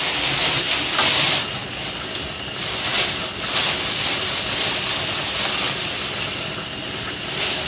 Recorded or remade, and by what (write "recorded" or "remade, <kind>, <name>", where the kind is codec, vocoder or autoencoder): recorded